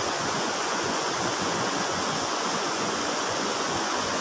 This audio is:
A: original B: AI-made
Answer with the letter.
B